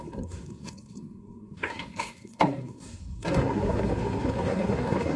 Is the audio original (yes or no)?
no